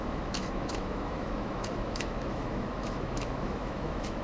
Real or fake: fake